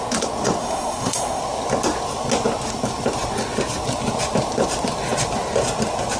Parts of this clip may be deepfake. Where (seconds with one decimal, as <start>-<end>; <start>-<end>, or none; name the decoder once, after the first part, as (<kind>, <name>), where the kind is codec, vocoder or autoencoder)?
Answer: 0.6-1.4 (codec, SNAC)